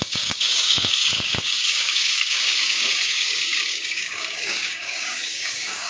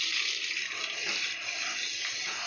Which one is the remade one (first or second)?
first